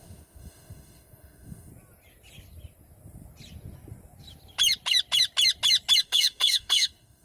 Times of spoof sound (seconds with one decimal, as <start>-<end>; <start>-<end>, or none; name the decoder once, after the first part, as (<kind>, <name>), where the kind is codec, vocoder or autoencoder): 0.0-1.7 (autoencoder, DAC-VAE); 6.0-7.2